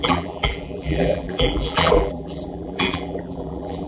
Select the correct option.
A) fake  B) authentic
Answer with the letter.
A